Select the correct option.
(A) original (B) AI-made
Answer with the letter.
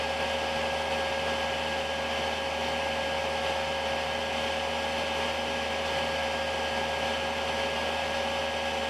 A